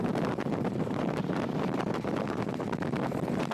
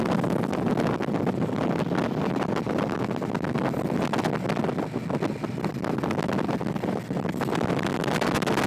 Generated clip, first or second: first